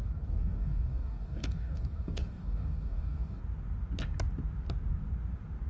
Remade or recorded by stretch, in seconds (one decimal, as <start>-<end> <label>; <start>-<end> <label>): 0.0-3.4 remade; 3.4-5.7 recorded